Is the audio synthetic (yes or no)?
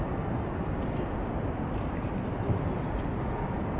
no